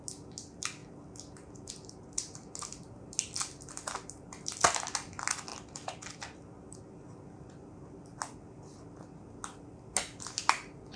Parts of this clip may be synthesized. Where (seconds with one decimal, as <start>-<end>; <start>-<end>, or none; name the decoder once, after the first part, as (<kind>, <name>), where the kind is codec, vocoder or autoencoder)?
none

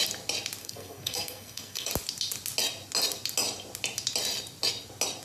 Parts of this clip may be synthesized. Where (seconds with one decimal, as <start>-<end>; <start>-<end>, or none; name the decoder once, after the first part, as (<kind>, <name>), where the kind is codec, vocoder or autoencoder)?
0.6-1.9 (codec, SNAC)

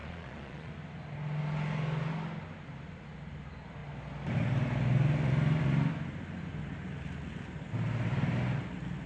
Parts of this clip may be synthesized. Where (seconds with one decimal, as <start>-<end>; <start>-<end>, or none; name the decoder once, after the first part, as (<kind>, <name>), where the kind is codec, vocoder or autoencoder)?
0.0-0.7 (vocoder, Vocos)